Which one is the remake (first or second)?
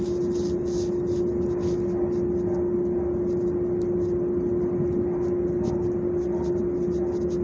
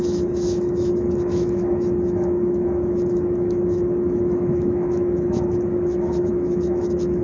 second